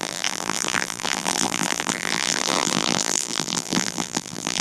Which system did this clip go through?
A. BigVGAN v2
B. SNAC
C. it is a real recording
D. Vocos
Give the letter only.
A